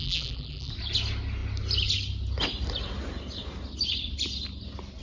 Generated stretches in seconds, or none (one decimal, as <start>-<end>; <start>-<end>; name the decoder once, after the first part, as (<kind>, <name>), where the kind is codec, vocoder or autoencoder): 0.0-0.7 (vocoder, BigVGAN v2)